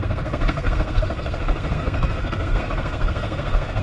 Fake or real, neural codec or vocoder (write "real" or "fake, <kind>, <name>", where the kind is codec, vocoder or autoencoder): fake, codec, SNAC